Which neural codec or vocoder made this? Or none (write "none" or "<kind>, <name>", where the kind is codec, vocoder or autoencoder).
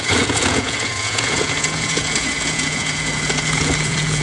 vocoder, Vocos